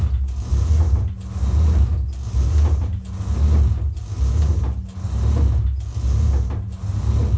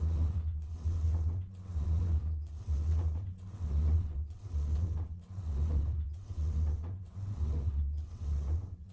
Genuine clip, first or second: first